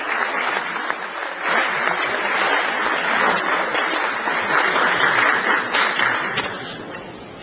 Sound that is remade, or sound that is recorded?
recorded